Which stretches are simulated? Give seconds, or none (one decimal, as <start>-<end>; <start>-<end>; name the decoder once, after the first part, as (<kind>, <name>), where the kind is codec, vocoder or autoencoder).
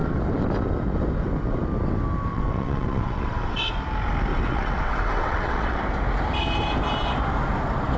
2.3-3.7 (vocoder, WaveNeXt); 4.3-5.8